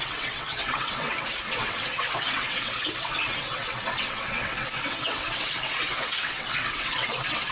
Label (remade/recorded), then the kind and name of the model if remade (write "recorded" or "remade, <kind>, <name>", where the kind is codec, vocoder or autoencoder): remade, vocoder, WaveNeXt